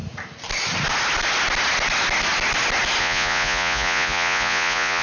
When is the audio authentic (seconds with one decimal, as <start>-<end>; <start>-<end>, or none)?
0.0-3.0